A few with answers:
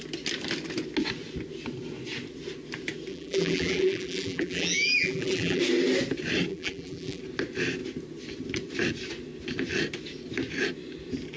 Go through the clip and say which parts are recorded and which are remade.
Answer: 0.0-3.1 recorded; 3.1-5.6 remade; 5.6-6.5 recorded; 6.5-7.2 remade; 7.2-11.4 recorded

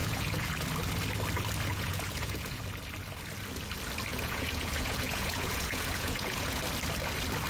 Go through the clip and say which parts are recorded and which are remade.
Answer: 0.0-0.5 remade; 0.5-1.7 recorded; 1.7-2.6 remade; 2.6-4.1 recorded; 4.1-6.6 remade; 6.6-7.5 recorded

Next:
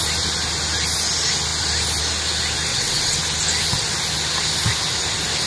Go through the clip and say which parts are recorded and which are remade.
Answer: 0.0-2.7 recorded; 2.7-3.2 remade; 3.2-5.5 recorded

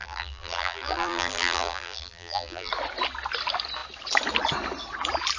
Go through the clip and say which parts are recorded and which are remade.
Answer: 0.0-2.7 remade; 2.7-5.4 recorded

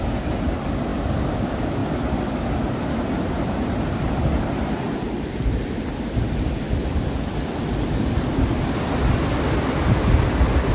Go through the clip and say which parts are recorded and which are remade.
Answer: 0.0-10.7 recorded

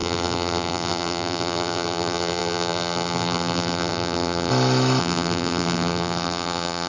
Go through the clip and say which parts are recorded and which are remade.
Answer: 0.0-4.5 remade; 4.5-5.0 recorded; 5.0-6.9 remade

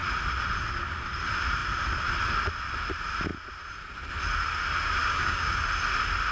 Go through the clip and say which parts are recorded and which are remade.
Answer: 0.0-5.0 recorded; 5.0-5.6 remade; 5.6-6.3 recorded

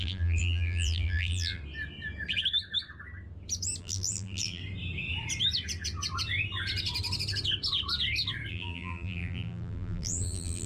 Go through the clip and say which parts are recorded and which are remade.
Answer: 0.0-1.6 remade; 1.6-3.8 recorded; 3.8-4.6 remade; 4.6-8.5 recorded; 8.5-10.7 remade